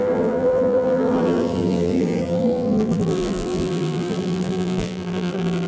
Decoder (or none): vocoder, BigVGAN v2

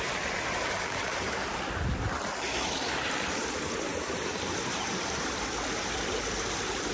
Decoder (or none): vocoder, BigVGAN v2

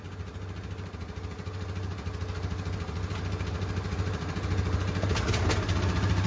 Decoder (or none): none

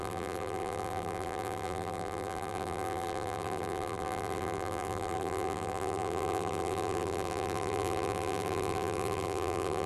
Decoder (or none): vocoder, BigVGAN v2